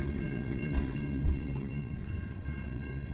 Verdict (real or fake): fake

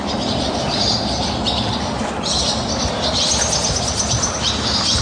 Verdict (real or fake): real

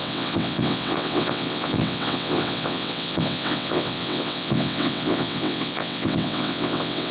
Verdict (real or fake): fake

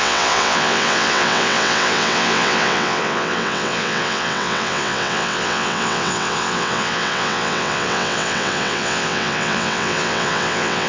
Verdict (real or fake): fake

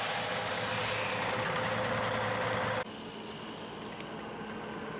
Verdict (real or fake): real